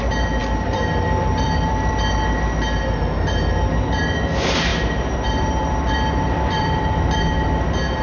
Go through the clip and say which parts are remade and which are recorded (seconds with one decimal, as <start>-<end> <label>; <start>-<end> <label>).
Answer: 0.0-0.4 recorded; 0.4-1.9 remade; 1.9-4.7 recorded; 4.7-7.1 remade; 7.1-8.0 recorded